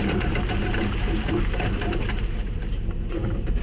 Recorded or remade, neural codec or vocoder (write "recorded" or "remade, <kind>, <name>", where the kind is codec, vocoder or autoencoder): remade, vocoder, BigVGAN v2